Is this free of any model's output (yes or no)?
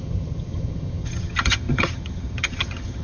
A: no